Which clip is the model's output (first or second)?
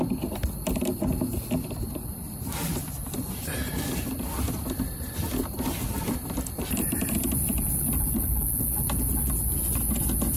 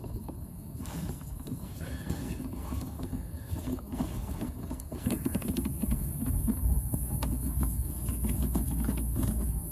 second